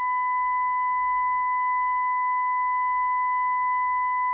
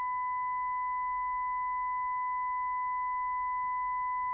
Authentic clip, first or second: second